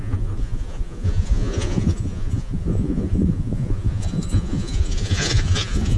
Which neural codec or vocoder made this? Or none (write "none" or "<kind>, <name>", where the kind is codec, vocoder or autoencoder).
vocoder, Vocos